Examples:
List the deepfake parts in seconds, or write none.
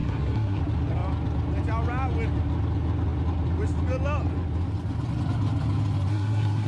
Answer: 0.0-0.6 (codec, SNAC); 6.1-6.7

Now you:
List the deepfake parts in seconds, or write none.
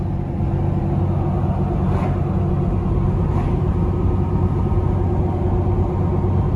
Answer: none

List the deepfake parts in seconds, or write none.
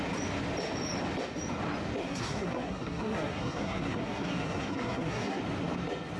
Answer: 2.0-5.4 (codec, SNAC)